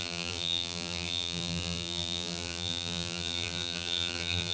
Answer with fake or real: fake